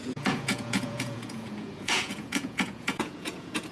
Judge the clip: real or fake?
fake